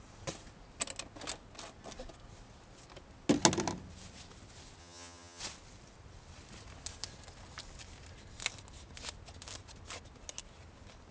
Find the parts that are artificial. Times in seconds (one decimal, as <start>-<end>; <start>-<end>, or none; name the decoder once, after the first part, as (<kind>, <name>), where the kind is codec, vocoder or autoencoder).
4.8-5.4 (vocoder, HiFi-GAN)